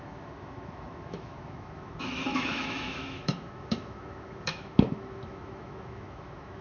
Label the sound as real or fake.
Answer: fake